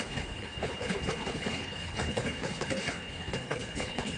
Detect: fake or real fake